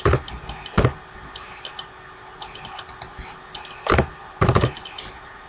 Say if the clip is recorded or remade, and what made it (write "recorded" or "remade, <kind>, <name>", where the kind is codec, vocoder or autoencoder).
recorded